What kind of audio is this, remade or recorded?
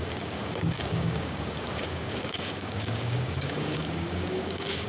remade